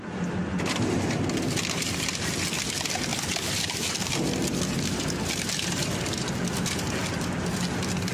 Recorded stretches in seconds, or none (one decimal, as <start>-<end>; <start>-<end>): 0.0-3.1; 5.9-7.0; 7.5-8.1